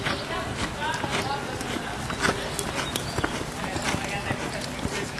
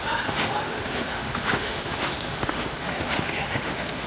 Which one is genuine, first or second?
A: first